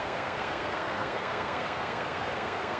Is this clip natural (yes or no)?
no